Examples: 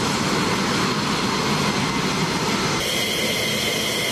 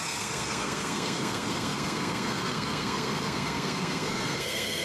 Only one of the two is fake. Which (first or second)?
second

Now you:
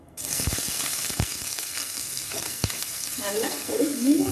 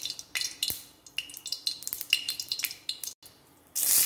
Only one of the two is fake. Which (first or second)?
first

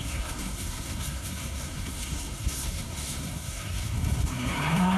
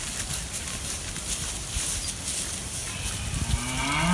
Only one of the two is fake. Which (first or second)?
first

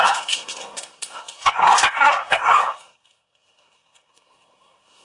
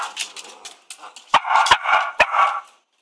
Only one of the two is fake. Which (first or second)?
first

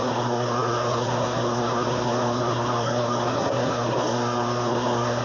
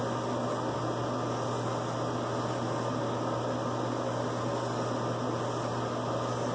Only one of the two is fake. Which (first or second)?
first